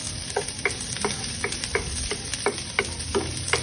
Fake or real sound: fake